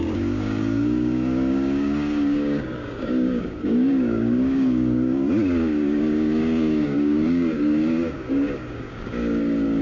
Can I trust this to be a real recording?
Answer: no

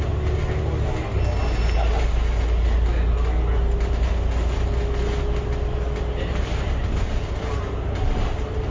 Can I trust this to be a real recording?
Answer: yes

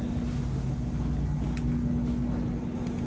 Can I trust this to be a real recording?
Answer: yes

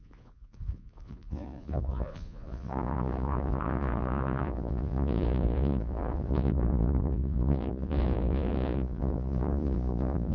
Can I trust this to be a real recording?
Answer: no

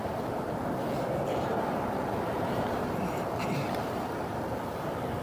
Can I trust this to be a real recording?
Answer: no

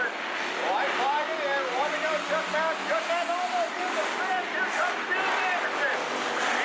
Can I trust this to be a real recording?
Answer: yes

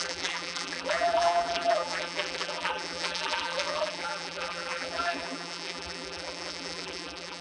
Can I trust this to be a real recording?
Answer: no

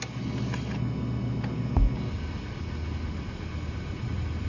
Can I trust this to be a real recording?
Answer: yes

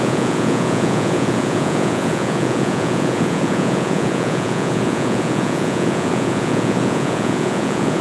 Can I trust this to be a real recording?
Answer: no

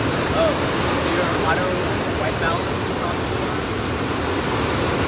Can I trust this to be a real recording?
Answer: yes